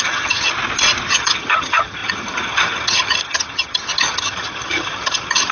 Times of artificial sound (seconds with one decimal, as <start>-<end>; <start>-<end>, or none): 0.0-0.5; 1.1-5.5